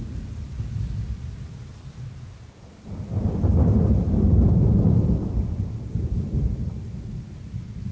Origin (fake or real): real